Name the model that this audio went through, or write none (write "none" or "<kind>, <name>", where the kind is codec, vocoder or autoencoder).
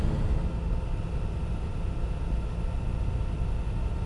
none